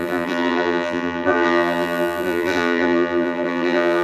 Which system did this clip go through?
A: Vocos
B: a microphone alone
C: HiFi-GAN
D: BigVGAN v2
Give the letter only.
D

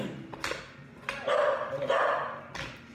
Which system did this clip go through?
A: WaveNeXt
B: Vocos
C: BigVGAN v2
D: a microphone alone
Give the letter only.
D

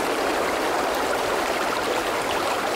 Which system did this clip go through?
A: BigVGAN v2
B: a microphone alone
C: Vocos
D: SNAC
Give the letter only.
B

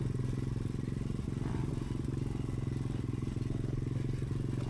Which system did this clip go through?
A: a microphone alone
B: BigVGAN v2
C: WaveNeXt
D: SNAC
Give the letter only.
A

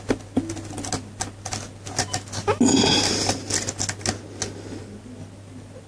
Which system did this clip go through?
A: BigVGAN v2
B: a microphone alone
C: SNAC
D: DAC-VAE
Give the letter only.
B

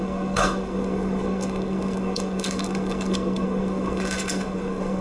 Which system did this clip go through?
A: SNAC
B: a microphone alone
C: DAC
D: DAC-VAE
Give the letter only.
A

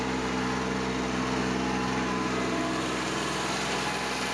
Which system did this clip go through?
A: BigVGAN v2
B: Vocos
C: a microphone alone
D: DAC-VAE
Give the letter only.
C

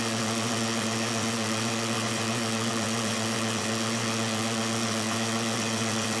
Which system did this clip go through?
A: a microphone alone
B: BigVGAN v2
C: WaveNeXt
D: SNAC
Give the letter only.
C